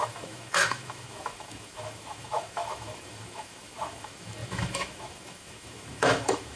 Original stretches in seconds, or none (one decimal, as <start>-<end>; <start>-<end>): none